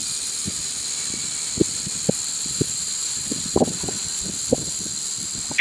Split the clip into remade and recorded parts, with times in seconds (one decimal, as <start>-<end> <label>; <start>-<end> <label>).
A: 0.0-5.6 recorded